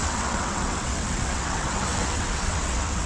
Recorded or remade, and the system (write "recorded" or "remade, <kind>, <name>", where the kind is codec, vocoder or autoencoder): remade, vocoder, WaveNeXt